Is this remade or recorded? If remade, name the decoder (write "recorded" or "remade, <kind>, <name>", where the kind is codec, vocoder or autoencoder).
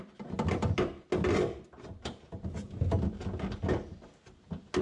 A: recorded